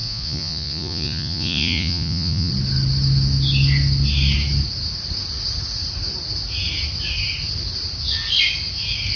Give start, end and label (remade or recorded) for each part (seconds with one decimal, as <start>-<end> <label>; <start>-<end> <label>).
0.0-2.5 remade; 2.5-9.2 recorded